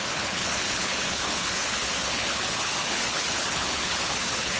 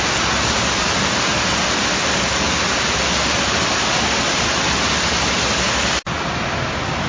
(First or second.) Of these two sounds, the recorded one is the second